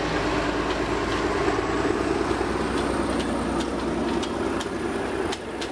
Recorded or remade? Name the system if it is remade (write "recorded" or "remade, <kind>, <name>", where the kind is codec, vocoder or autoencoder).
recorded